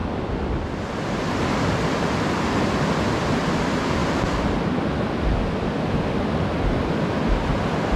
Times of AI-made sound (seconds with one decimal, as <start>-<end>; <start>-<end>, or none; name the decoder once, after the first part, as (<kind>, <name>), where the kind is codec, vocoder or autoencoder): none